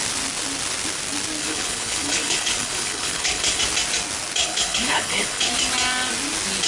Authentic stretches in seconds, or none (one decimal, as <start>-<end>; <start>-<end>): 0.0-1.4; 3.6-4.4; 5.5-6.7